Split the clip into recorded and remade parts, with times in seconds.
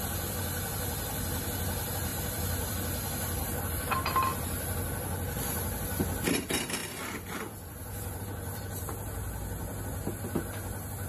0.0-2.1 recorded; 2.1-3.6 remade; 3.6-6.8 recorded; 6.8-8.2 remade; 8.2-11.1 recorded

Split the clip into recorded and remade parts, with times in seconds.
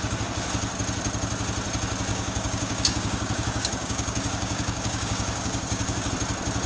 0.0-2.1 recorded; 2.1-6.1 remade; 6.1-6.7 recorded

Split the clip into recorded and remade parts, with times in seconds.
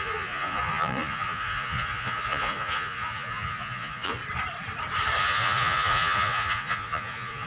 0.0-4.2 remade; 4.2-5.2 recorded; 5.2-7.5 remade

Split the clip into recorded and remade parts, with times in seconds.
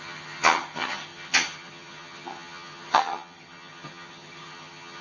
0.0-5.0 remade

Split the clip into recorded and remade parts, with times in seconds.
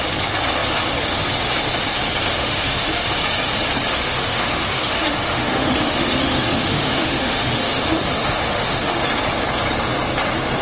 0.0-2.3 recorded; 2.3-2.9 remade; 2.9-3.9 recorded; 3.9-9.0 remade; 9.0-10.6 recorded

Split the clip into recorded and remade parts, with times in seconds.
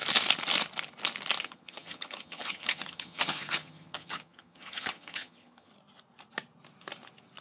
0.0-1.4 recorded; 1.4-5.7 remade; 5.7-7.4 recorded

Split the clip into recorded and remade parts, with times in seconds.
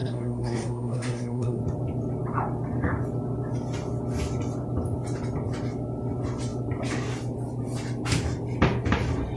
0.0-1.6 remade; 1.6-9.4 recorded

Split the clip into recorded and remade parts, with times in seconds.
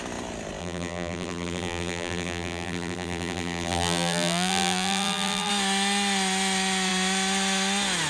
0.0-0.6 recorded; 0.6-5.5 remade; 5.5-8.1 recorded